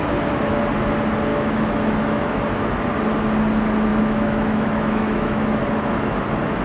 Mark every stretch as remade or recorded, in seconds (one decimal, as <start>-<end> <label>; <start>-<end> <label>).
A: 0.0-1.3 recorded; 1.3-2.4 remade; 2.4-3.9 recorded; 3.9-5.6 remade; 5.6-6.6 recorded